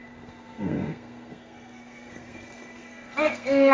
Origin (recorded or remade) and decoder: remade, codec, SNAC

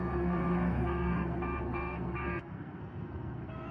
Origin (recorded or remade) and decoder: remade, codec, SNAC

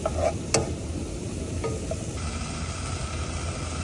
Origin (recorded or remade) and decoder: recorded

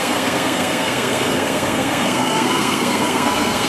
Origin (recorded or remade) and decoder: remade, codec, SNAC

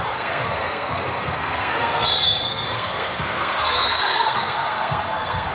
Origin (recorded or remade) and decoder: remade, codec, SNAC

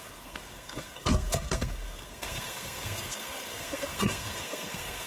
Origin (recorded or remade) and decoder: remade, codec, SNAC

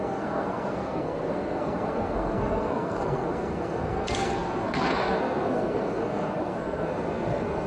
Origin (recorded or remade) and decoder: remade, codec, SNAC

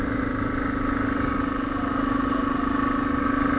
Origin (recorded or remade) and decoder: recorded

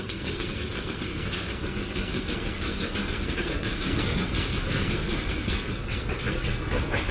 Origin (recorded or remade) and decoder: remade, codec, SNAC